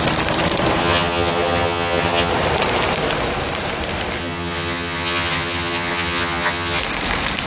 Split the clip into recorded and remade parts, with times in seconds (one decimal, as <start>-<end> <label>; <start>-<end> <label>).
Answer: 0.0-0.8 recorded; 0.8-2.3 remade; 2.3-4.2 recorded; 4.2-6.8 remade; 6.8-7.5 recorded